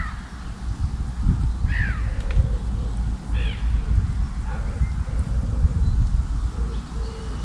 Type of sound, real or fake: real